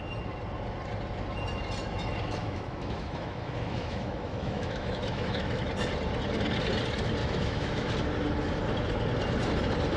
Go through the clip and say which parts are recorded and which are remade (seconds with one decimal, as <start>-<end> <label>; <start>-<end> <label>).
0.0-2.4 recorded; 2.4-5.7 remade; 5.7-7.2 recorded; 7.2-7.9 remade; 7.9-10.0 recorded